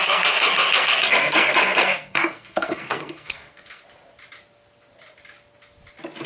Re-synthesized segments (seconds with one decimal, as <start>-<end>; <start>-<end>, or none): 0.0-3.8